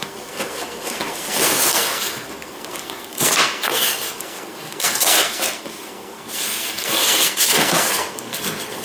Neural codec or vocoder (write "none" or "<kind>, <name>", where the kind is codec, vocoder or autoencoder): codec, SNAC